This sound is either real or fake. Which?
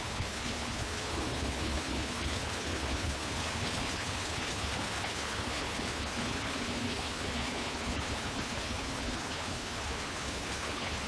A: fake